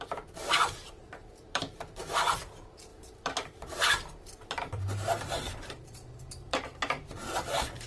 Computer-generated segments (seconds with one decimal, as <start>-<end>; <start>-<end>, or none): 0.8-1.6; 2.9-7.9